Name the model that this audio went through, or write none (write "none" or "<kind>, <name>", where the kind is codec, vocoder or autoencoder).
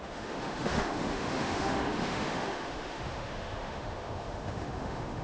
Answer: autoencoder, DAC-VAE